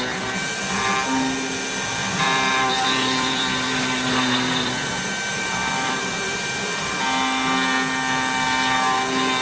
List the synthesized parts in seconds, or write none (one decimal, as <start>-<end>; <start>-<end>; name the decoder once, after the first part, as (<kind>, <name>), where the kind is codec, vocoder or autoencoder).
2.0-6.9 (vocoder, BigVGAN v2)